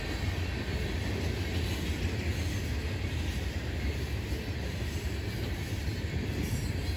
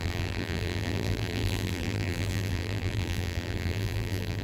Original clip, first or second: first